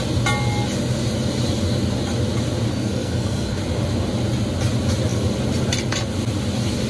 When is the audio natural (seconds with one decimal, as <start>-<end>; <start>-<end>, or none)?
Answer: 0.0-2.7; 3.6-6.9